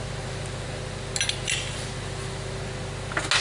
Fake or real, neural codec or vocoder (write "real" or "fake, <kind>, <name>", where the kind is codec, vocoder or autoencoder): real